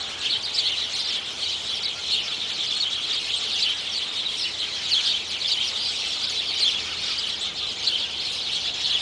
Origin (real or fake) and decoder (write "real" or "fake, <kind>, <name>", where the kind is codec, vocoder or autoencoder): real